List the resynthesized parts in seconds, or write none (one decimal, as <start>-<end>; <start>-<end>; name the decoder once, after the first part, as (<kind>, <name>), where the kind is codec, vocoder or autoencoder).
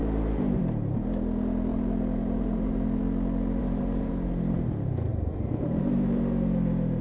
0.0-0.6 (vocoder, BigVGAN v2); 1.7-3.0; 3.6-4.1; 5.1-6.2